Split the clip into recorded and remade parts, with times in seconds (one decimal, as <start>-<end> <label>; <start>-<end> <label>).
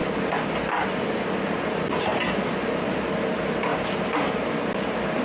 0.0-2.0 remade; 2.0-3.7 recorded; 3.7-4.3 remade; 4.3-5.2 recorded